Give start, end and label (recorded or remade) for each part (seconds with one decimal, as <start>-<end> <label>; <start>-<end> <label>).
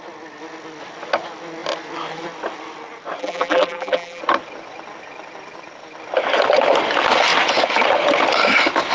0.0-3.2 recorded; 3.2-4.2 remade; 4.2-8.9 recorded